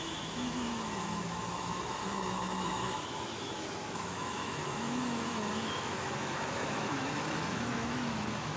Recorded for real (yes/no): no